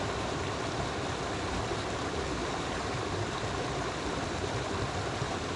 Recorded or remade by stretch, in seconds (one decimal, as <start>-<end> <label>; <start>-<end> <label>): 0.0-5.6 recorded